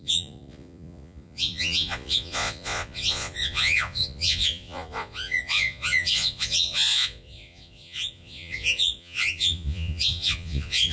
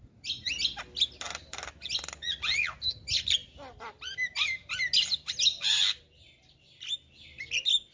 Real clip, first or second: second